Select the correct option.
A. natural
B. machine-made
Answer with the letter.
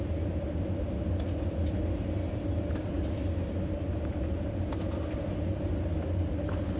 A